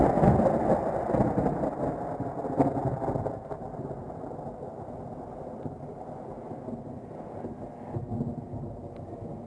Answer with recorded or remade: recorded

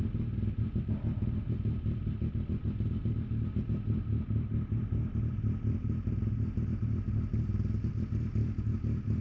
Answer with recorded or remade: recorded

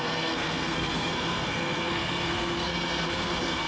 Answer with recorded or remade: remade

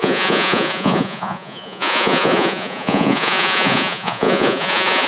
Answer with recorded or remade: remade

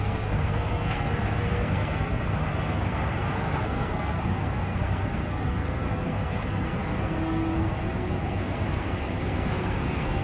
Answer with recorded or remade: remade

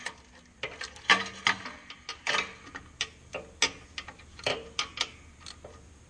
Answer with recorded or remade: recorded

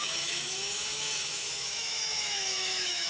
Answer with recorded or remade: remade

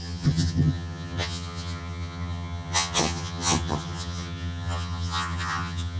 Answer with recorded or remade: remade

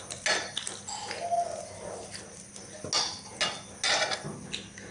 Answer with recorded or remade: recorded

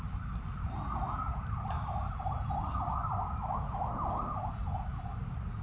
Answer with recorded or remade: recorded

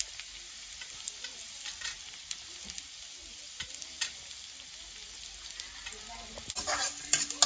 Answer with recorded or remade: recorded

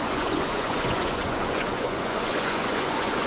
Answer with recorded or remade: remade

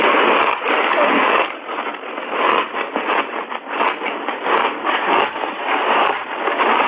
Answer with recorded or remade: recorded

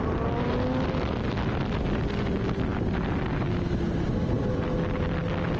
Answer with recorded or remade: recorded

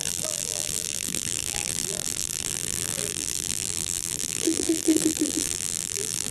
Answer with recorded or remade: remade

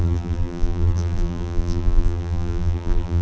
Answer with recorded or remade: remade